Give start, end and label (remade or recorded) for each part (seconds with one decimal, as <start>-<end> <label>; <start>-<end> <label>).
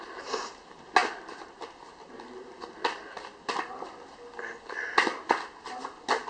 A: 0.0-6.3 recorded